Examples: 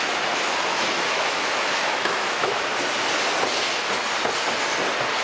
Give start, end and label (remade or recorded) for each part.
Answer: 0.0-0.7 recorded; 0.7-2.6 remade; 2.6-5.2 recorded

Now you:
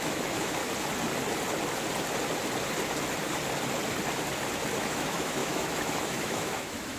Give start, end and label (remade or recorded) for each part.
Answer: 0.0-0.6 remade; 0.6-4.8 recorded; 4.8-7.0 remade